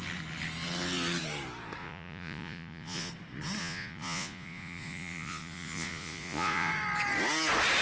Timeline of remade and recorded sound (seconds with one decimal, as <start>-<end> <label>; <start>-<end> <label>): 0.0-1.8 recorded; 1.8-3.1 remade; 3.1-3.6 recorded; 3.6-6.7 remade; 6.7-7.8 recorded